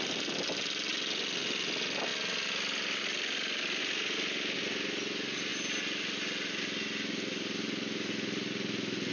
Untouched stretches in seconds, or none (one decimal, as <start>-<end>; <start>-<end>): 0.0-9.1